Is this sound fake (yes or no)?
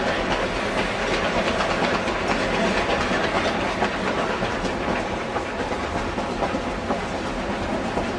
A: no